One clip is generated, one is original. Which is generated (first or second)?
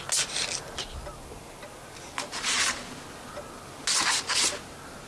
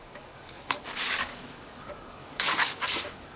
second